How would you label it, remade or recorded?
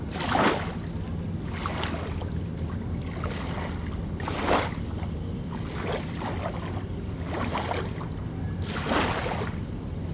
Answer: recorded